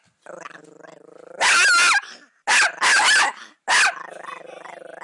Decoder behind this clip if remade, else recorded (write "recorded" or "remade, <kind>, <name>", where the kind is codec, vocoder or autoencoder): recorded